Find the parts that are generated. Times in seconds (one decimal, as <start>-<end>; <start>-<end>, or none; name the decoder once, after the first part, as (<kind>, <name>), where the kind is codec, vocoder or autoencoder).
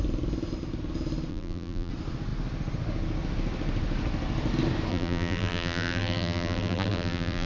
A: 1.3-1.9 (vocoder, BigVGAN v2); 4.9-7.5